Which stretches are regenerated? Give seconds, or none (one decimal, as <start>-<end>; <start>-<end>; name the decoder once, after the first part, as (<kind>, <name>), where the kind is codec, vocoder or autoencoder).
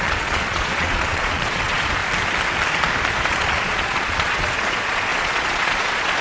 0.0-2.0 (vocoder, Vocos); 3.2-6.2